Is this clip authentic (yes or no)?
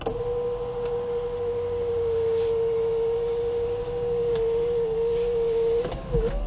yes